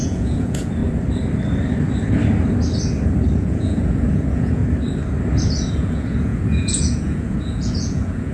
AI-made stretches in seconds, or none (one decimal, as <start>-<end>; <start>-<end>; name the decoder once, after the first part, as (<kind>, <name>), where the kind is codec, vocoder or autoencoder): 0.0-0.8 (vocoder, Vocos); 3.4-4.6; 5.7-8.3